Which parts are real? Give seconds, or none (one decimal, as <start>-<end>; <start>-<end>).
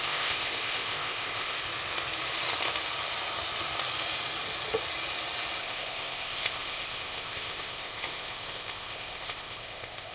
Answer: 1.6-5.6